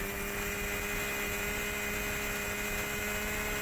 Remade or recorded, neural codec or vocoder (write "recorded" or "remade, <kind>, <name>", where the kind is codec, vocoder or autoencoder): recorded